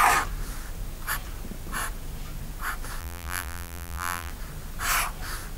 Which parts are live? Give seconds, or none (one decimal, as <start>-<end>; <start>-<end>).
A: 0.0-3.0; 4.3-5.6